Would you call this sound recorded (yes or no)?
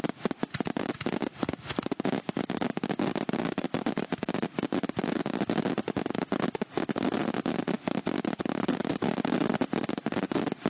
yes